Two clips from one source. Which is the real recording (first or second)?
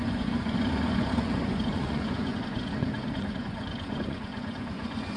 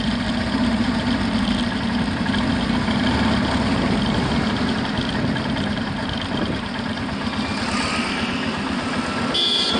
second